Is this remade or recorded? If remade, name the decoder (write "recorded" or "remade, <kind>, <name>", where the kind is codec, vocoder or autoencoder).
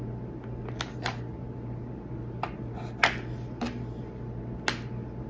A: recorded